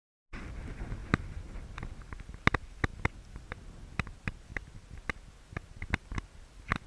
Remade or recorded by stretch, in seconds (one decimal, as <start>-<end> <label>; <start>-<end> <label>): 0.0-6.9 recorded